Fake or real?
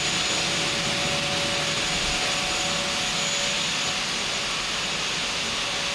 real